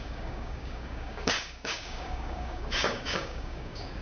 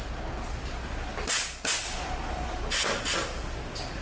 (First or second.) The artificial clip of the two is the first